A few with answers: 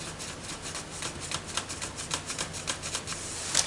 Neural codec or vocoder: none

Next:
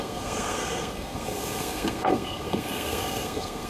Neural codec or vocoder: codec, SNAC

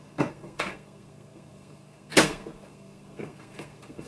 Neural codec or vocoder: codec, SNAC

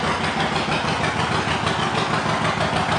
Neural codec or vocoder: none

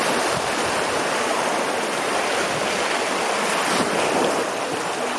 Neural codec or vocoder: none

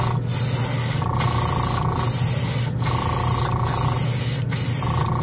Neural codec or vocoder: none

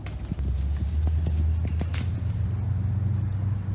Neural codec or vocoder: none